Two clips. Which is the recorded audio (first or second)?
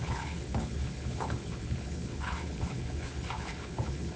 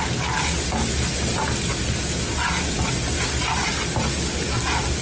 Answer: second